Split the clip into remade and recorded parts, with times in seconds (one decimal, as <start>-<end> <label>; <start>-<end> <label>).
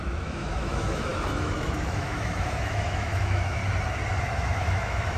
0.0-3.6 remade; 3.6-4.2 recorded; 4.2-5.2 remade